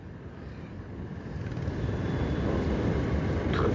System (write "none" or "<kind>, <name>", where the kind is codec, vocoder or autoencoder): vocoder, BigVGAN v2